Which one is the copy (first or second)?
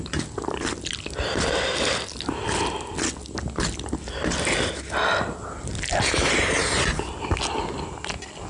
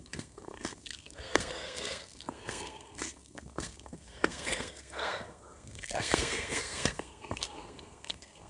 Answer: second